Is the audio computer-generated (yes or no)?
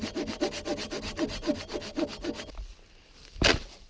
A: no